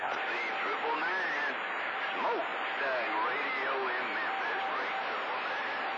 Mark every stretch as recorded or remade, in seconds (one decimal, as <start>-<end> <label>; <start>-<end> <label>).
0.0-6.0 recorded